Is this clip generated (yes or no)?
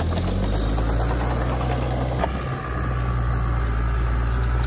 no